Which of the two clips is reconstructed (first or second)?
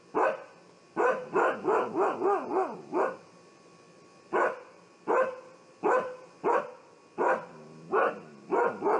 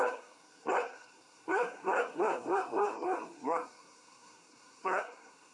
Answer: second